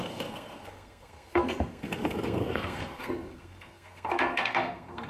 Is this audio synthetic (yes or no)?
yes